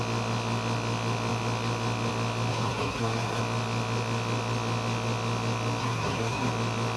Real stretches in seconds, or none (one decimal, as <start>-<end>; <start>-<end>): 0.0-2.5; 3.4-5.8; 6.5-7.0